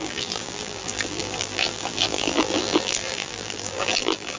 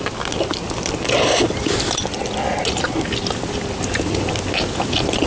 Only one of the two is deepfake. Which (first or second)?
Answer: first